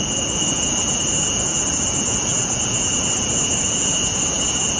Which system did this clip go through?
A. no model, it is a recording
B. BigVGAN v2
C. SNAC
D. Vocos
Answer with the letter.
D